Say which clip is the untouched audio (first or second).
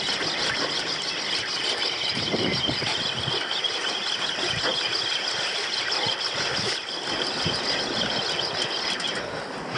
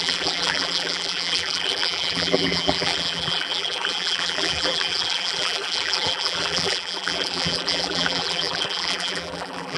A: first